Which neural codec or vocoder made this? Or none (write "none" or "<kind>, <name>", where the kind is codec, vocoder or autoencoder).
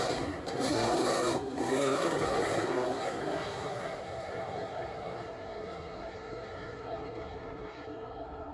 codec, SNAC